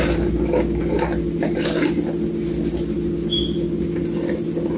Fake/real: real